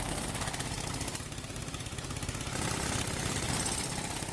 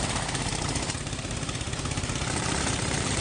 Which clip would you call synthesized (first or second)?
second